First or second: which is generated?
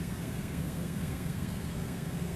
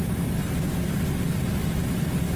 first